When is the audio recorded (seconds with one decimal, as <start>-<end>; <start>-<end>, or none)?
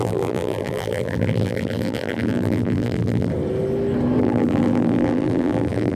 3.3-4.2